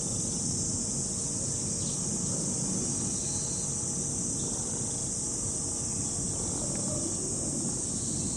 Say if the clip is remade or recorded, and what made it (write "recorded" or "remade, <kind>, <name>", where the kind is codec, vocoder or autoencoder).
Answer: recorded